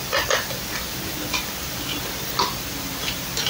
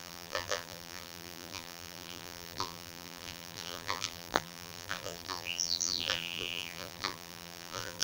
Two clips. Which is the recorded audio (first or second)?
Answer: first